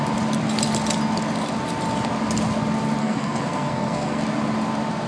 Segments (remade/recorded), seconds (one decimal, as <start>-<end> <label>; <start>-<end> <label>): 0.0-3.0 recorded; 3.0-4.2 remade; 4.2-5.1 recorded